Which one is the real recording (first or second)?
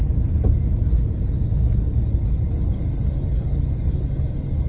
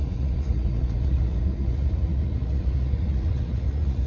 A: first